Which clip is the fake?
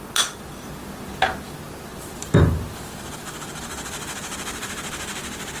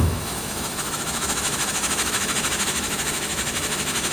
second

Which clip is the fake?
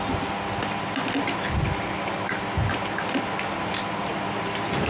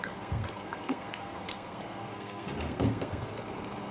second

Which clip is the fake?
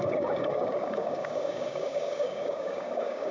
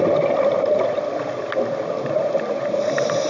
first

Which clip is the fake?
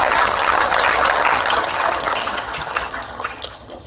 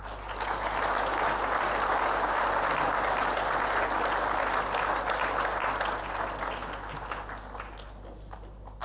first